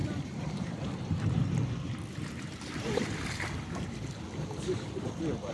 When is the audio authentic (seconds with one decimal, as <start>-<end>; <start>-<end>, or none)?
0.9-2.1; 3.0-5.5